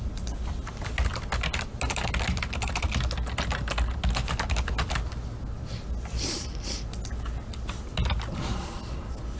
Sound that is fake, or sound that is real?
real